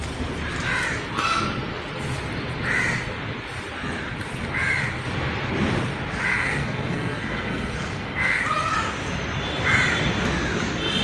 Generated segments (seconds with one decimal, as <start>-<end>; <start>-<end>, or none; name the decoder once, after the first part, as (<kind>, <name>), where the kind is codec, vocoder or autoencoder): 6.3-8.4 (codec, SNAC)